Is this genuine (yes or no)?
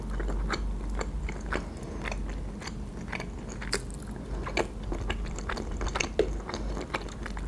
yes